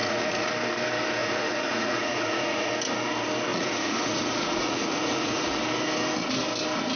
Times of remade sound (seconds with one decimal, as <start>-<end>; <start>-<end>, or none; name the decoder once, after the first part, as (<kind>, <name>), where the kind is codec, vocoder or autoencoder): 0.0-0.5 (vocoder, Vocos); 1.2-2.7; 3.5-5.6